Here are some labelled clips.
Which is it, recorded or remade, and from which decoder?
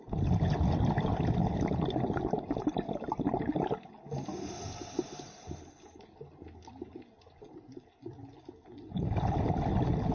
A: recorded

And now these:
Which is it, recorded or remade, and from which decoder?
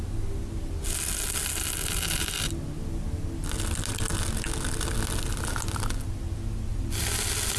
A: recorded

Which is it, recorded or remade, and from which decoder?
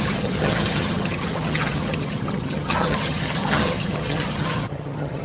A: remade, vocoder, HiFi-GAN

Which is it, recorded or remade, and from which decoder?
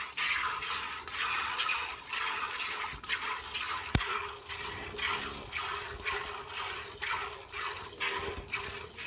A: recorded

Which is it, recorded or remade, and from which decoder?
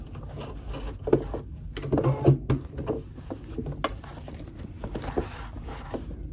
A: recorded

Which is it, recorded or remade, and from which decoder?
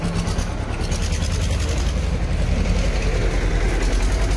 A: recorded